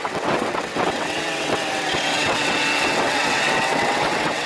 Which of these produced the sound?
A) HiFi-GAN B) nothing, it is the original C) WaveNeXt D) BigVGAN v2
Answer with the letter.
C